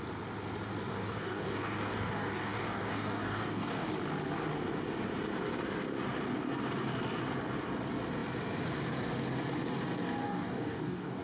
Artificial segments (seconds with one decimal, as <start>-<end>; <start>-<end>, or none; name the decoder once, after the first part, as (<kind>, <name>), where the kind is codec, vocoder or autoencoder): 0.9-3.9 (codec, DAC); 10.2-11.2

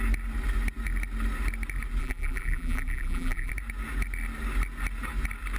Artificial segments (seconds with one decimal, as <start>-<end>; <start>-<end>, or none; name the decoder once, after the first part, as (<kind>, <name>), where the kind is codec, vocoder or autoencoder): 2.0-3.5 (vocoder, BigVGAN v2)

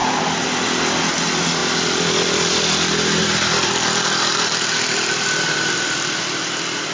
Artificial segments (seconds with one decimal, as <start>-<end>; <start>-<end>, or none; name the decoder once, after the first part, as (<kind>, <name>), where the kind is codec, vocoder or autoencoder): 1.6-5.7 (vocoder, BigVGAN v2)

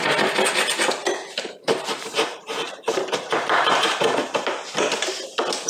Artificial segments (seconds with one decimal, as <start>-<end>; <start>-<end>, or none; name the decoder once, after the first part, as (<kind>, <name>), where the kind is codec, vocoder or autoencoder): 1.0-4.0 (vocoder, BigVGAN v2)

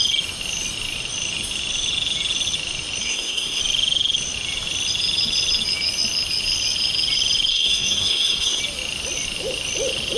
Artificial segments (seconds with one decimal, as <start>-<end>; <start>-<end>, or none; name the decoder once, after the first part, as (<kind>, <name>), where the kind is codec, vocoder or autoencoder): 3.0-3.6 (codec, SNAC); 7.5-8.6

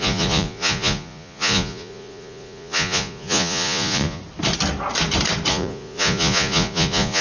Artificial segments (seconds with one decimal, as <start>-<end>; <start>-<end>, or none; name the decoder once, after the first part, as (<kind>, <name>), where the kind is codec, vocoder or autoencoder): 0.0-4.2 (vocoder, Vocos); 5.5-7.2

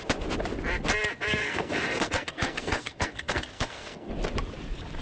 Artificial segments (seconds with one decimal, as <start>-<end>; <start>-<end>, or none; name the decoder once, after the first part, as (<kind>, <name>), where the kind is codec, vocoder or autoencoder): 1.4-4.1 (codec, SNAC)

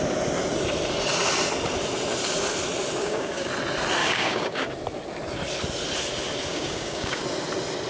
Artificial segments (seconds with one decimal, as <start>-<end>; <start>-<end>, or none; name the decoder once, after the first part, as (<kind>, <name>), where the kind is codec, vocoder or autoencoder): 3.0-3.5 (codec, DAC); 4.0-4.7; 6.5-7.2